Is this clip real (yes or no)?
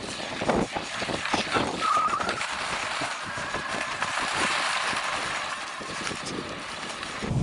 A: no